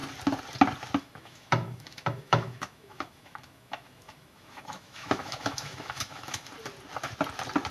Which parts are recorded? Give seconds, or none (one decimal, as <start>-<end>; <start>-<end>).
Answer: 0.0-1.0; 6.5-7.7

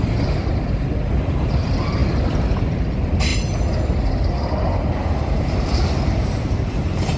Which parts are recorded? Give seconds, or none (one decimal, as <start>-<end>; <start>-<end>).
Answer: 0.0-7.2

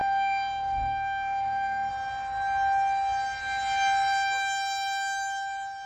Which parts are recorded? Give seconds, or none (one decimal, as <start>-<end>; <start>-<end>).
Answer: 1.9-5.9

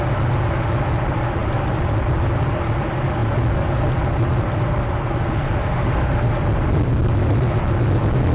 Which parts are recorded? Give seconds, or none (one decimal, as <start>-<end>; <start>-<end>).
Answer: 0.0-5.6; 6.3-8.3

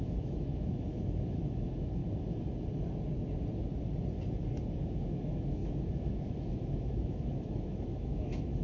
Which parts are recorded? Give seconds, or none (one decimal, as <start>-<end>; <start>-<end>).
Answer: 2.0-4.6